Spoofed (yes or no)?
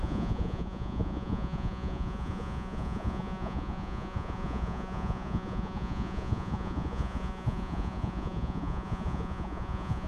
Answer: yes